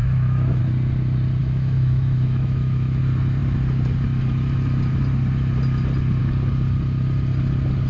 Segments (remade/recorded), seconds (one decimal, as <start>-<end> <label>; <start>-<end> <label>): 0.0-0.6 remade; 0.6-1.4 recorded; 1.4-3.0 remade; 3.0-7.9 recorded